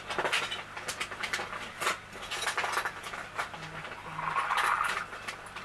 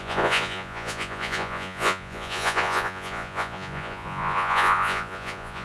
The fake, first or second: second